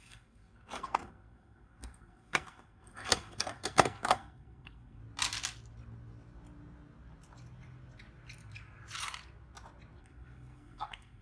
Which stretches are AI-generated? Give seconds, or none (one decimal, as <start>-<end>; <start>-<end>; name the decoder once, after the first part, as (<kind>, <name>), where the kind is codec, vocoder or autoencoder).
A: 0.0-5.0 (codec, SNAC); 10.0-11.2